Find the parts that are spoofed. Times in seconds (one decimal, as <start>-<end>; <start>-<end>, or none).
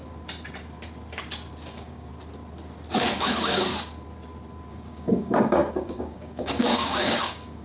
1.6-2.1; 3.1-3.7; 4.7-7.6